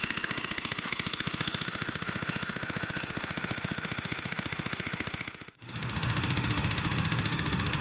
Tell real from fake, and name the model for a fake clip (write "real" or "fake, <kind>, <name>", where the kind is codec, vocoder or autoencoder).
fake, autoencoder, DAC-VAE